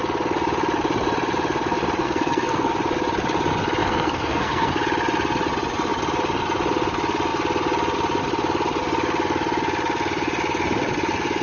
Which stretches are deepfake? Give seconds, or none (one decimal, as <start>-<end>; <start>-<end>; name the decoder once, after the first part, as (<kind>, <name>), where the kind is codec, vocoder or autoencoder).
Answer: 2.0-2.7 (codec, SNAC); 3.8-4.7